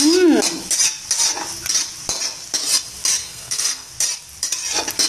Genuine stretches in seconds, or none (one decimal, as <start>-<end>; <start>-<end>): 0.0-3.2; 3.9-5.1